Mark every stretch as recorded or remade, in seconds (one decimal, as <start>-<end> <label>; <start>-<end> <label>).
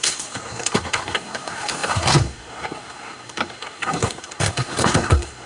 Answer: 0.0-5.5 remade